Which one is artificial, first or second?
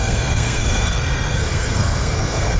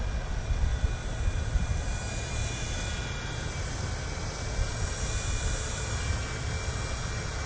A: first